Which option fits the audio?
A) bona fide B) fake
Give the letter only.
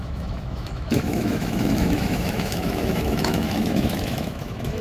B